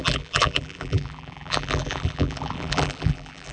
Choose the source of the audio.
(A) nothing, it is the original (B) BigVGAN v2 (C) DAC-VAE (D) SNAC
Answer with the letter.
B